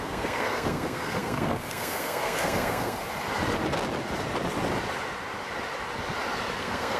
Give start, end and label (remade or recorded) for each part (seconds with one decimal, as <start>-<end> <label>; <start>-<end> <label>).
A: 0.0-3.0 remade; 3.0-6.6 recorded; 6.6-7.0 remade